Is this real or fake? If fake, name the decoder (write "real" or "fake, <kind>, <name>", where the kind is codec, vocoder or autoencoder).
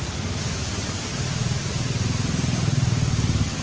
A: fake, vocoder, BigVGAN v2